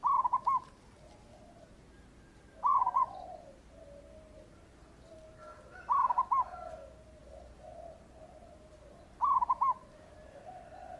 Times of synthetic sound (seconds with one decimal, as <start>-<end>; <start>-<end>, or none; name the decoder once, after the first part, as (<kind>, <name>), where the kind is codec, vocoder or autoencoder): 2.7-3.4 (vocoder, Vocos)

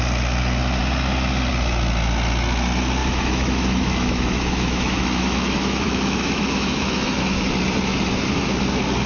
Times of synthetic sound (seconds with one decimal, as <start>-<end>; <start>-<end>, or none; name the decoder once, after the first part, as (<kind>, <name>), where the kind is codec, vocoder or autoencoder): 3.0-7.5 (autoencoder, DAC-VAE)